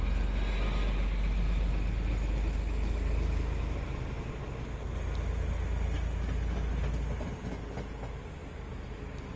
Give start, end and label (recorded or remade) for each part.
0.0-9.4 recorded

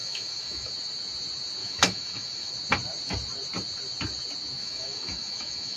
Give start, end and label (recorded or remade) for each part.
0.0-0.7 remade; 0.7-1.6 recorded; 1.6-2.5 remade; 2.5-4.6 recorded; 4.6-5.8 remade

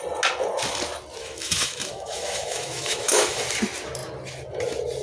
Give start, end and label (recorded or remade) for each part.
0.0-1.2 recorded; 1.2-3.4 remade; 3.4-5.0 recorded

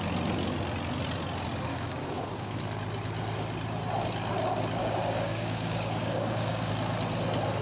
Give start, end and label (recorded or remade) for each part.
0.0-1.7 recorded; 1.7-2.6 remade; 2.6-4.8 recorded; 4.8-6.7 remade; 6.7-7.6 recorded

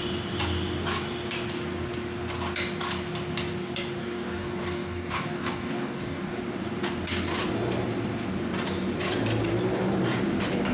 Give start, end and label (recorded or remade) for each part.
0.0-4.0 recorded; 4.0-6.4 remade; 6.4-10.7 recorded

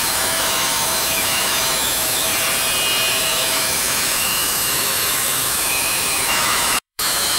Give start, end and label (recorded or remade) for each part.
0.0-2.3 remade; 2.3-3.1 recorded; 3.1-7.4 remade